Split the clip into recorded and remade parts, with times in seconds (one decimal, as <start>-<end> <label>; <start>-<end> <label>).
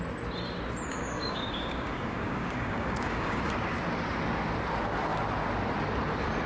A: 0.0-0.9 recorded; 0.9-3.4 remade; 3.4-6.5 recorded